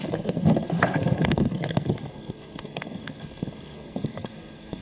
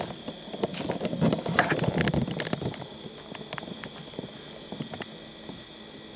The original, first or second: second